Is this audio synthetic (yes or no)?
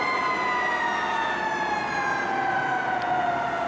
no